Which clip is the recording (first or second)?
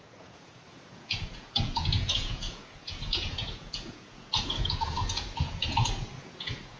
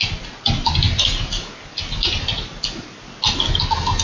second